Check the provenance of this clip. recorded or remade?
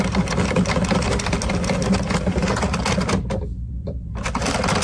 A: recorded